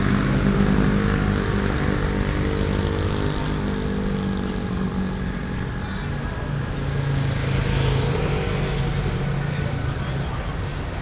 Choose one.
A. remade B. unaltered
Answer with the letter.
B